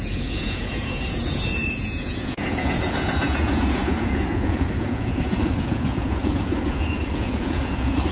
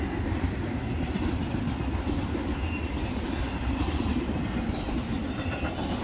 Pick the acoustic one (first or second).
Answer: second